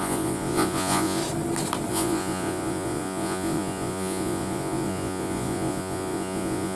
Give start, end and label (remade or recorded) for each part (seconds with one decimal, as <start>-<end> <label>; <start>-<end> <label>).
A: 0.0-1.2 remade; 1.2-1.9 recorded; 1.9-6.8 remade